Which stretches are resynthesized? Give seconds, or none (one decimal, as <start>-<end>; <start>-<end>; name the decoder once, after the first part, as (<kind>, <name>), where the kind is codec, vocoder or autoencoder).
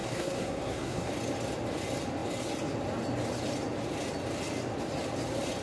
0.0-1.1 (codec, SNAC)